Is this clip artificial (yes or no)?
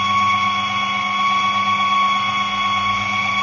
no